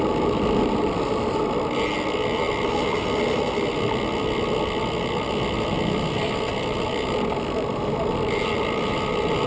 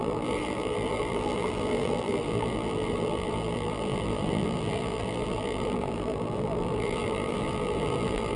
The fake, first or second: second